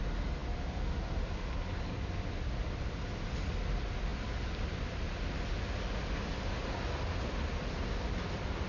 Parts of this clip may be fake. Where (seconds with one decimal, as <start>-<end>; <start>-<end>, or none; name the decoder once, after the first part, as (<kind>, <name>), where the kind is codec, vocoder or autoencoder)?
none